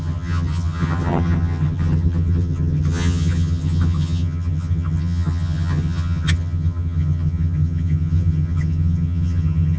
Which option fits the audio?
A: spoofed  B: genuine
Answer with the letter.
A